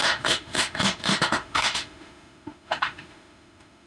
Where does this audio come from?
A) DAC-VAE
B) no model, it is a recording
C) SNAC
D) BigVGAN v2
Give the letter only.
A